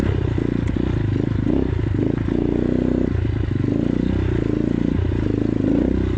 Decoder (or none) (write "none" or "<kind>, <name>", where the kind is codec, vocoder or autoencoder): none